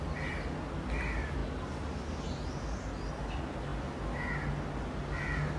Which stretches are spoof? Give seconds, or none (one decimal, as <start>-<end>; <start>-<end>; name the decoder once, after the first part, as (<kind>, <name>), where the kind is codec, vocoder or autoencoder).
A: none